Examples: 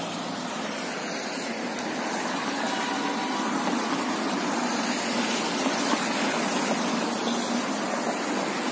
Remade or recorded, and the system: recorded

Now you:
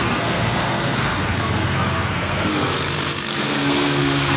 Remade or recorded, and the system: remade, codec, SNAC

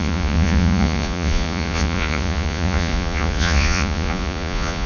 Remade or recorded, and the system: remade, vocoder, Vocos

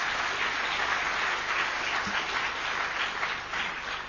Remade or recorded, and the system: recorded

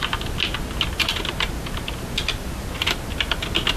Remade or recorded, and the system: recorded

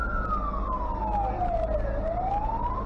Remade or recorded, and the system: recorded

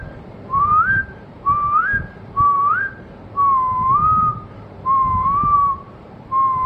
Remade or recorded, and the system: remade, vocoder, BigVGAN v2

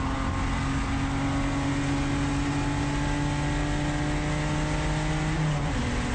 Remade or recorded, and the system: recorded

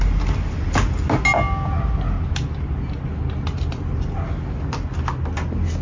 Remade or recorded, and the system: recorded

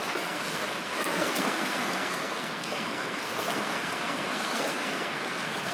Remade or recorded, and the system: remade, codec, SNAC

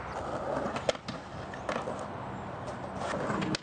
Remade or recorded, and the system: recorded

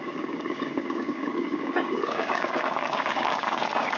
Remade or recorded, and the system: remade, codec, DAC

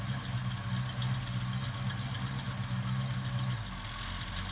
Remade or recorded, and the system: recorded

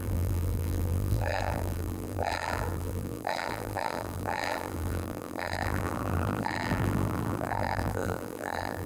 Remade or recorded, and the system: remade, vocoder, BigVGAN v2